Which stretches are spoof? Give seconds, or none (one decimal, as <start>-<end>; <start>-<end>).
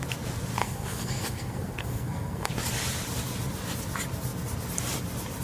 0.6-2.5